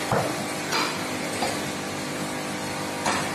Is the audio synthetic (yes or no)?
no